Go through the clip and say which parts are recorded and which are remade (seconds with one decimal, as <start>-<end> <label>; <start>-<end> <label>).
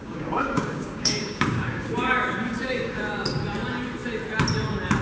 0.0-3.0 remade; 3.0-5.0 recorded